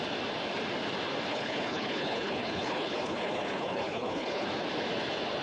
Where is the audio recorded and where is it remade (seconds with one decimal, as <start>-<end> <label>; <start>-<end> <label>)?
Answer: 0.0-1.3 recorded; 1.3-4.5 remade; 4.5-5.4 recorded